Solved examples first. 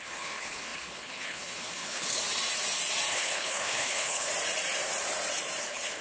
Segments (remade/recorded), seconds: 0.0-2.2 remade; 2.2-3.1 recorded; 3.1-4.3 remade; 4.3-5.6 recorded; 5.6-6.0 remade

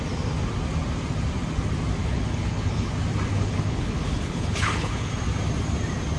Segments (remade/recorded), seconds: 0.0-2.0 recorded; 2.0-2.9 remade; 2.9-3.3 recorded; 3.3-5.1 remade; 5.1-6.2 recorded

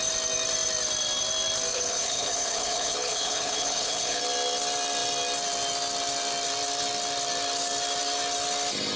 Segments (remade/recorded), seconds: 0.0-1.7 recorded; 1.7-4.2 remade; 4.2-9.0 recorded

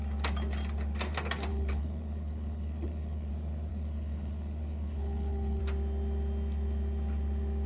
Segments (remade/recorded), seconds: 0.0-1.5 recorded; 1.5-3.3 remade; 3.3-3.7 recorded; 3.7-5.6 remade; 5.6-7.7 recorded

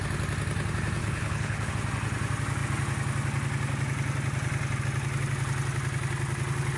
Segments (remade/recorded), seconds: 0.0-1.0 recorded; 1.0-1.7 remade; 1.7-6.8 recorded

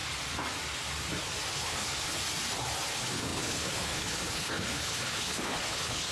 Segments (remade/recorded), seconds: 0.0-1.5 recorded; 1.5-2.2 remade; 2.2-2.9 recorded; 2.9-6.1 remade

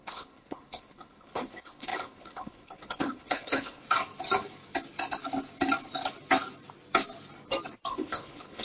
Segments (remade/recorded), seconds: 0.0-3.8 remade; 3.8-7.9 recorded; 7.9-8.6 remade